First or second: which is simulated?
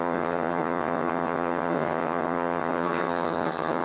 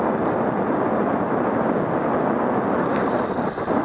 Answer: first